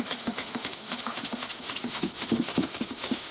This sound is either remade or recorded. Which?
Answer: remade